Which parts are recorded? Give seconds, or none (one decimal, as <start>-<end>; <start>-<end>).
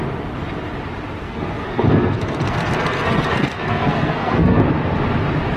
0.0-1.2; 4.6-5.6